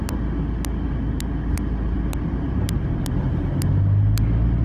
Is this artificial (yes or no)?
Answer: no